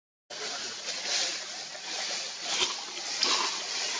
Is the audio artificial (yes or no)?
no